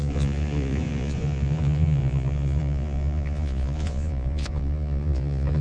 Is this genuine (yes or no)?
no